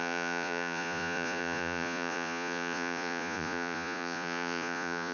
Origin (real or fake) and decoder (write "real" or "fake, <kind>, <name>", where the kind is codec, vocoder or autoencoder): fake, vocoder, Vocos